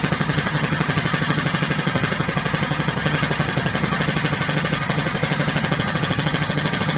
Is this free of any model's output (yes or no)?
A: no